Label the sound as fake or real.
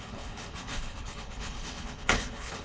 fake